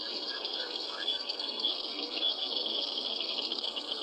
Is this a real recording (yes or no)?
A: no